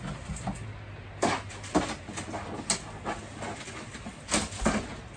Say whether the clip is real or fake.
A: real